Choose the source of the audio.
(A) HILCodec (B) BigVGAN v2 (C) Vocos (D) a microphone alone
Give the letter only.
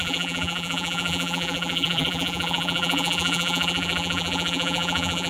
B